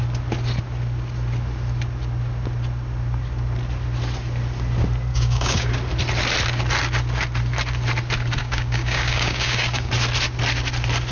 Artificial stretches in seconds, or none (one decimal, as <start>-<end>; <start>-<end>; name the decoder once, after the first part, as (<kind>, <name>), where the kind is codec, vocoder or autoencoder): 5.1-5.7 (codec, DAC); 8.4-9.9